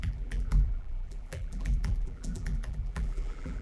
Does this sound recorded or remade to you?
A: remade